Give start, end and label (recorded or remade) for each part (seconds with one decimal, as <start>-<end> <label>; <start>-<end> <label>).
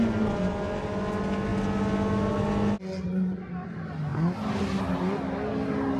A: 0.0-6.0 recorded